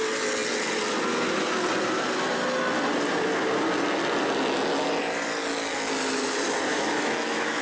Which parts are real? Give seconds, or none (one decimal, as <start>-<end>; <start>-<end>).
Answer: 0.0-6.7